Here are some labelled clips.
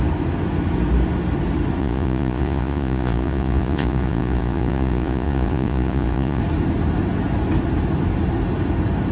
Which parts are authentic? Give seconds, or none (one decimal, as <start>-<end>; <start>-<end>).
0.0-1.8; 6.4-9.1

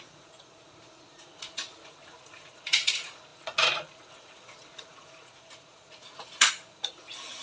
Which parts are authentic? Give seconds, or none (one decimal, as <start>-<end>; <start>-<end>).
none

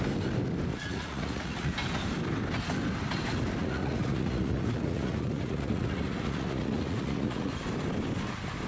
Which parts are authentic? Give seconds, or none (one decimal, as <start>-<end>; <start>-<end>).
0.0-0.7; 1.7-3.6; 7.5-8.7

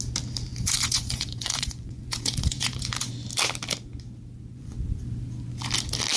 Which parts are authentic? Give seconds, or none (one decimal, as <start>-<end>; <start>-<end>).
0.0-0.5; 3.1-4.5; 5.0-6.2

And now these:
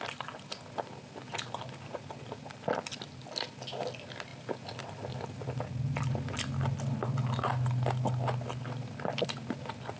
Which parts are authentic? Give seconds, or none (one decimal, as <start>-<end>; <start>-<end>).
0.0-10.0